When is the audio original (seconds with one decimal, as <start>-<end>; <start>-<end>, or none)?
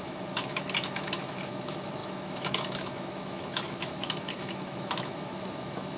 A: none